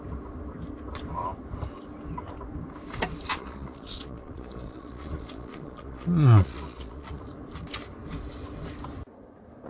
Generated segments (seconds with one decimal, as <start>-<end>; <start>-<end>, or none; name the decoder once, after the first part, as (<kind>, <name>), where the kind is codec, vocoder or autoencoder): 3.3-7.2 (vocoder, Vocos)